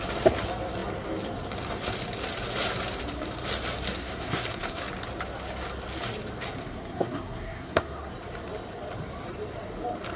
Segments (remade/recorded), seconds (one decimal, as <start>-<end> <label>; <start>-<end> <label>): 0.0-4.0 recorded; 4.0-4.8 remade; 4.8-6.6 recorded; 6.6-8.1 remade; 8.1-10.2 recorded